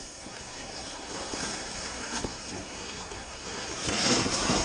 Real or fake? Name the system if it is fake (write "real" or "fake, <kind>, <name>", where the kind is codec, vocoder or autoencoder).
fake, codec, SNAC